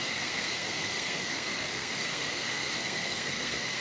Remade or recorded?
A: remade